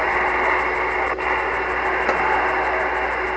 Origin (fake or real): real